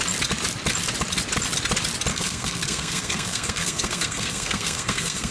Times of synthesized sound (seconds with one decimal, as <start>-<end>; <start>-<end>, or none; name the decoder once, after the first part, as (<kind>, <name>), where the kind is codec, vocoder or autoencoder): 2.1-5.3 (codec, SNAC)